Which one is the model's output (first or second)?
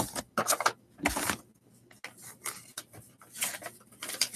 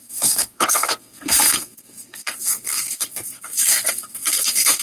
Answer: second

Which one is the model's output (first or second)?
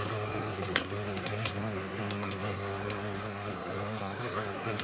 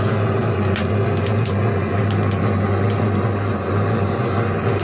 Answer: first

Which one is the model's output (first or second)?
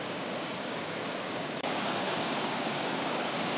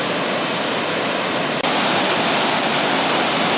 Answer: first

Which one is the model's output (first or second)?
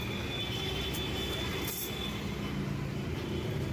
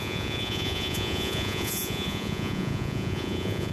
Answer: second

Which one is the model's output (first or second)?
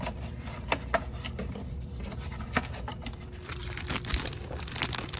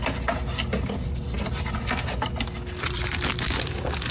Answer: first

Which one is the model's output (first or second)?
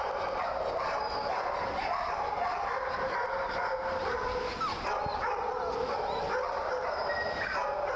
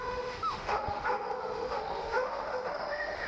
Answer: second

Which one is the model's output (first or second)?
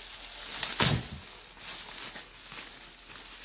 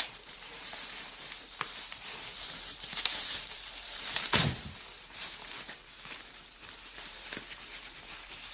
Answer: second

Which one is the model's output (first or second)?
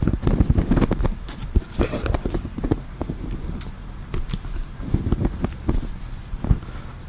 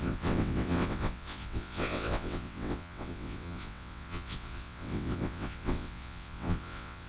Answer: second